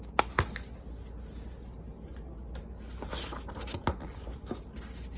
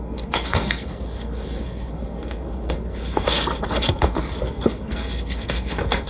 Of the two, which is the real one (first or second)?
first